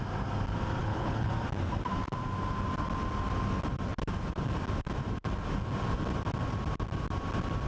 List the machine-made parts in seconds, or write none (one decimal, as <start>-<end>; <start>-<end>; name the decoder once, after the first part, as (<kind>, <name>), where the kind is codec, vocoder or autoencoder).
0.8-1.3 (codec, HILCodec)